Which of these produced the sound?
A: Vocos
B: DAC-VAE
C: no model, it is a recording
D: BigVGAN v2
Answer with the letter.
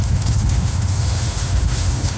B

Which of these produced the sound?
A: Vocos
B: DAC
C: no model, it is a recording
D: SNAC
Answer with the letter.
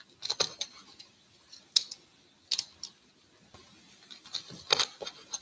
C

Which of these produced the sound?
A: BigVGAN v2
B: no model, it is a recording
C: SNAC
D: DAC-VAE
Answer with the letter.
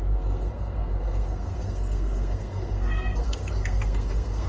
C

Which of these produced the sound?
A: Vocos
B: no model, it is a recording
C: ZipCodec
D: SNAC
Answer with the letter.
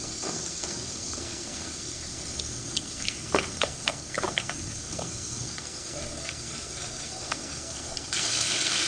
D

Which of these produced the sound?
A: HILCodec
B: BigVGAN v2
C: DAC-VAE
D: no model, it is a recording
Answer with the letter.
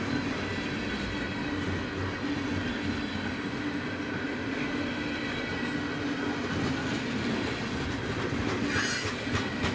D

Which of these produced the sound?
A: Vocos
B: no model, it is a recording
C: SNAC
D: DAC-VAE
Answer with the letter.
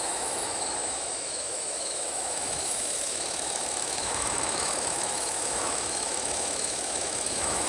D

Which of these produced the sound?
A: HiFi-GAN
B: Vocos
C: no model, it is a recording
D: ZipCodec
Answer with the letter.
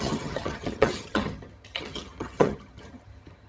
A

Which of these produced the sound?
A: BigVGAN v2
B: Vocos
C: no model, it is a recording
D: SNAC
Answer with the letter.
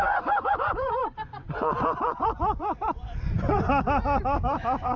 B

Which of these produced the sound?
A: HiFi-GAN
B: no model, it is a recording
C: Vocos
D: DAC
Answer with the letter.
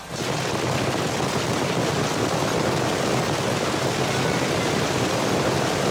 B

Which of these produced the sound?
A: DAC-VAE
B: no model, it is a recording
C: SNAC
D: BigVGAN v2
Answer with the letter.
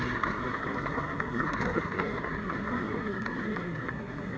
C